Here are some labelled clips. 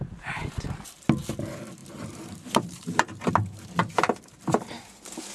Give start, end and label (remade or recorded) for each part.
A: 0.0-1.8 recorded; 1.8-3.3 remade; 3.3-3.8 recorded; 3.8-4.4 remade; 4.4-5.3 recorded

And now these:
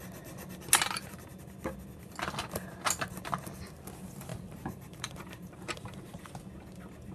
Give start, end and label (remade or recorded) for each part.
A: 0.0-4.3 recorded; 4.3-6.2 remade; 6.2-7.1 recorded

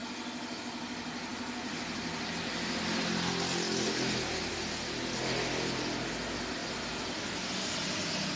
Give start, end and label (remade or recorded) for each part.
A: 0.0-6.6 recorded; 6.6-8.4 remade

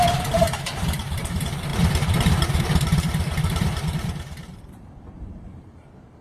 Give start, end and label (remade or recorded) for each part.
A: 0.0-6.2 remade

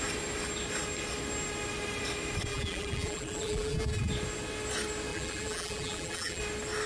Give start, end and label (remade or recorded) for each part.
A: 0.0-2.5 recorded; 2.5-4.1 remade; 4.1-5.1 recorded; 5.1-6.4 remade; 6.4-6.9 recorded

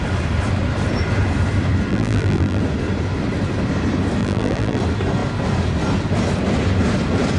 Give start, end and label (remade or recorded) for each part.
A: 0.0-1.9 recorded; 1.9-2.6 remade; 2.6-4.2 recorded; 4.2-4.8 remade; 4.8-7.4 recorded

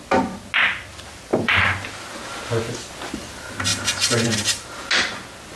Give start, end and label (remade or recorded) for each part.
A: 0.0-1.3 recorded; 1.3-2.1 remade; 2.1-3.7 recorded; 3.7-4.8 remade; 4.8-5.6 recorded